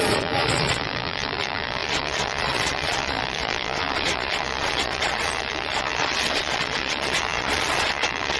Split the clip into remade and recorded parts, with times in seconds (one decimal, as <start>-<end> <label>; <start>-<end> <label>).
0.0-8.4 remade